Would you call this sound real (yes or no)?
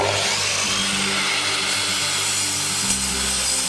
yes